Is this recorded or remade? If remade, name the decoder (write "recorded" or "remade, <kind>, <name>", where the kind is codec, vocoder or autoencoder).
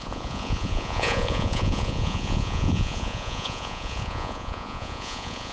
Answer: remade, vocoder, Vocos